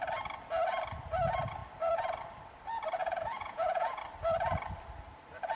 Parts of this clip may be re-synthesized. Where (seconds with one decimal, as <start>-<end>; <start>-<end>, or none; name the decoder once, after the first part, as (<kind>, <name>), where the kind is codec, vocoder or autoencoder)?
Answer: 3.0-4.0 (vocoder, Vocos)